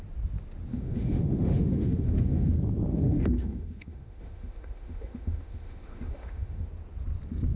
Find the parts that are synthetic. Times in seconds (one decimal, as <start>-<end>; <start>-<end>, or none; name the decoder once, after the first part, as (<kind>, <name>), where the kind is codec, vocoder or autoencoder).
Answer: 0.7-2.5 (autoencoder, DAC-VAE); 2.9-6.7